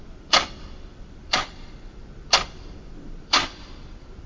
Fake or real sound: fake